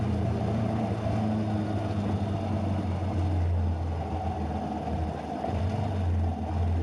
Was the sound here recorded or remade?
recorded